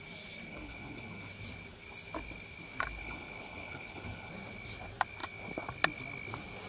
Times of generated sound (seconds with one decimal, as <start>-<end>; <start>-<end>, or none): 0.5-1.3; 3.0-4.3